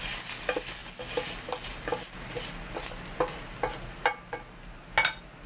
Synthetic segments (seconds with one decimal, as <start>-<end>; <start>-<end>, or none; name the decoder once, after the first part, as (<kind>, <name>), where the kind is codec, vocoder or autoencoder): none